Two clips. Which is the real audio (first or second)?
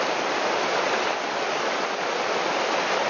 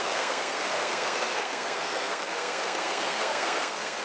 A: first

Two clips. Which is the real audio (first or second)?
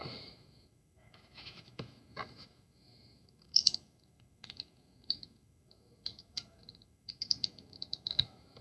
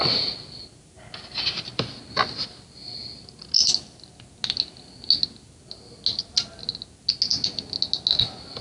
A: second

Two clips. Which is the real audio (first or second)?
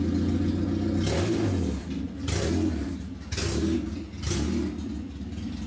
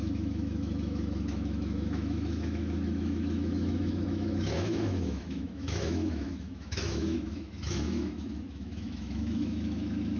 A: first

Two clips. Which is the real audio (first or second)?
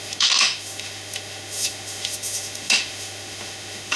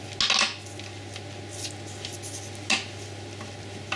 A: second